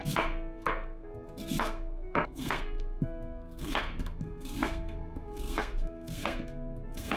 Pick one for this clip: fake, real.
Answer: fake